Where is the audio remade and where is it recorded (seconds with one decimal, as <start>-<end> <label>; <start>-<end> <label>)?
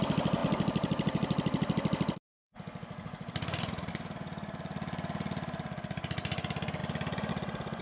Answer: 0.0-7.8 recorded